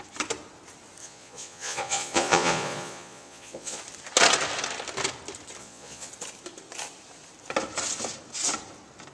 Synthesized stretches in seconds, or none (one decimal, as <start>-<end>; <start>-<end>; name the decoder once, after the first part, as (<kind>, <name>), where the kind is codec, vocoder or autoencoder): 1.0-3.8 (vocoder, Vocos); 5.6-6.1